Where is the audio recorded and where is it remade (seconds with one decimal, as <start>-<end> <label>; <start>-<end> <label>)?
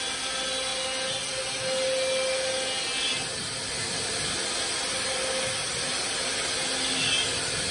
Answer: 0.0-7.7 recorded